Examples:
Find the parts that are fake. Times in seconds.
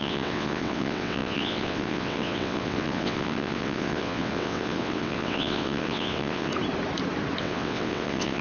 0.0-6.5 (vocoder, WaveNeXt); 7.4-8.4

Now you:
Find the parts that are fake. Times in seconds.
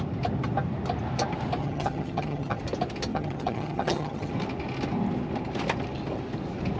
1.6-2.6 (vocoder, HiFi-GAN); 3.1-4.3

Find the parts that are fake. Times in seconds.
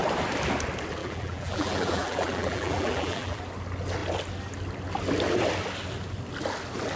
1.0-3.4 (vocoder, BigVGAN v2)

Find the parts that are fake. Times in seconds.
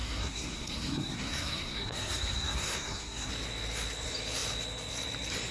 0.0-3.3 (codec, SNAC)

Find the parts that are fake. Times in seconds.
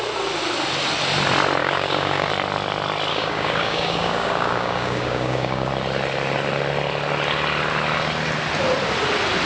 1.6-2.3 (codec, DAC); 3.1-5.7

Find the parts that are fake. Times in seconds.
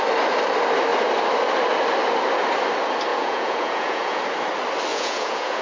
3.1-4.2 (vocoder, Vocos); 4.9-5.6